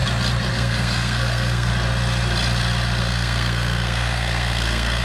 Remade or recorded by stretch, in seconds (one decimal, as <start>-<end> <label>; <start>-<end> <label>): 0.0-0.5 recorded; 0.5-1.7 remade; 1.7-3.0 recorded; 3.0-5.0 remade